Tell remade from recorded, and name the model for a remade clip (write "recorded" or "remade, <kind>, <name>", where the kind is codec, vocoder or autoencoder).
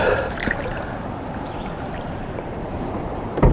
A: remade, vocoder, BigVGAN v2